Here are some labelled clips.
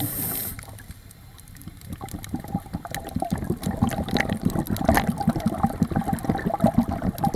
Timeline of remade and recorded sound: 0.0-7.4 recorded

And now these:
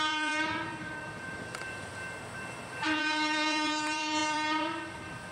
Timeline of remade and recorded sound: 0.0-5.3 remade

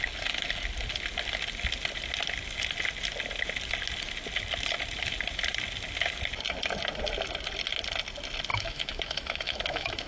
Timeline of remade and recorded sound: 0.0-8.5 recorded; 8.5-10.1 remade

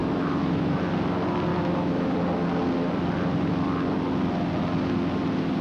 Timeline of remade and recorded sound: 0.0-0.8 remade; 0.8-1.5 recorded; 1.5-2.1 remade; 2.1-5.6 recorded

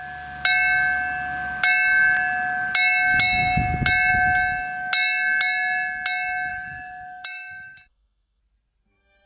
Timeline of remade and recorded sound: 0.0-6.5 recorded; 6.5-8.4 remade; 8.4-9.3 recorded